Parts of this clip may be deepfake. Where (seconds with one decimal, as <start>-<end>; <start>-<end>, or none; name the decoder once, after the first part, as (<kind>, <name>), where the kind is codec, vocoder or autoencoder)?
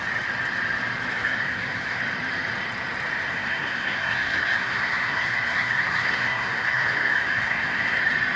1.1-2.0 (codec, SNAC); 3.3-8.0